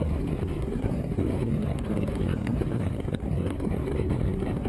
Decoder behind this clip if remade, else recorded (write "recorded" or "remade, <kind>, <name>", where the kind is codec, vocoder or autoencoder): remade, codec, SNAC